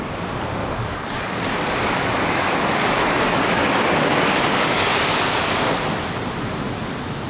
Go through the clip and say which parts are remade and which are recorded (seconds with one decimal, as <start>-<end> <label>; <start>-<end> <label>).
0.0-0.6 recorded; 0.6-5.0 remade; 5.0-7.3 recorded